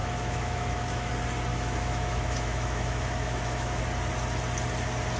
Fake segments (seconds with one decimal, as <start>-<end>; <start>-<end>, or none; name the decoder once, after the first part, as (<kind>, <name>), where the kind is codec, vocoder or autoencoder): 0.0-1.1 (autoencoder, DAC-VAE); 1.5-3.8